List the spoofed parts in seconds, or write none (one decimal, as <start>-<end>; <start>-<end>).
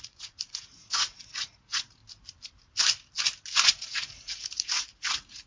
0.0-2.0; 3.7-5.5